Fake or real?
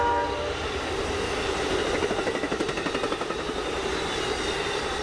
real